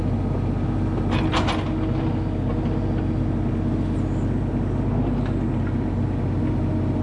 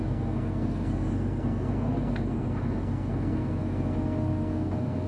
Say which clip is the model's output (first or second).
second